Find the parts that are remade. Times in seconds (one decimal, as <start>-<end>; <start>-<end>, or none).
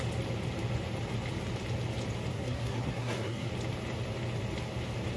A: 2.3-3.5